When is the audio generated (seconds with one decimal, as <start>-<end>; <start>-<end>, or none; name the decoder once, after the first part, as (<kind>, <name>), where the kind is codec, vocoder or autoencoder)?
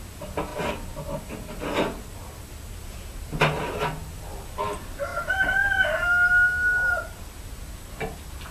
none